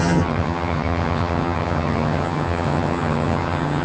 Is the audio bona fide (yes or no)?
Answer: no